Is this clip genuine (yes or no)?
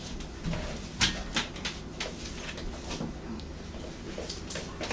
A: yes